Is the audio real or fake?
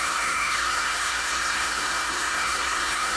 fake